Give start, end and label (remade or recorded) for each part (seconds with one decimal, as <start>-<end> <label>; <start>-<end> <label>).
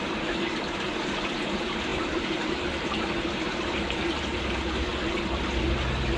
0.0-4.9 remade; 4.9-6.2 recorded